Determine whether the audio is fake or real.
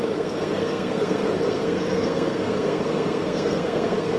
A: fake